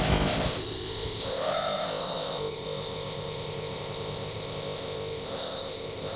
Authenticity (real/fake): fake